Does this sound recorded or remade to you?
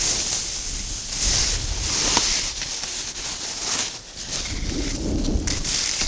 recorded